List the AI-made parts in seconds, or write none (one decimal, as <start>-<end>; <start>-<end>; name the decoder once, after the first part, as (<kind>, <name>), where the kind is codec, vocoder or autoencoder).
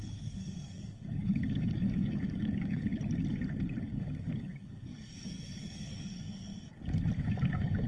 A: 0.0-2.9 (codec, DAC); 3.8-6.5; 7.2-7.9